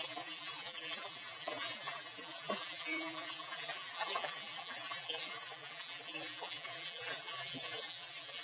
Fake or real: fake